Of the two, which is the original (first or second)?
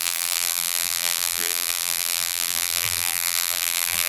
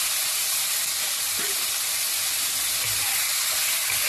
second